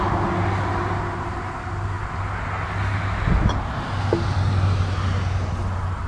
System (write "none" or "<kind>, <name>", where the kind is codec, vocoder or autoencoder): none